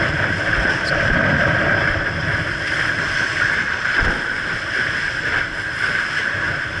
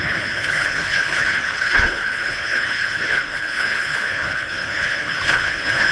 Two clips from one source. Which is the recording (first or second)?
first